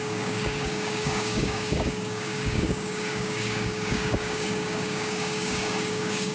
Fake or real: fake